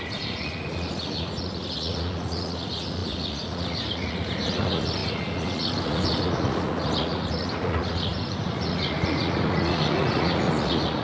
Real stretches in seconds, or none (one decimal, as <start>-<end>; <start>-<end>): none